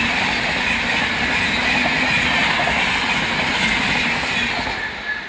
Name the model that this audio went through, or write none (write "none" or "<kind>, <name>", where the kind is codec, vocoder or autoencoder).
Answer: none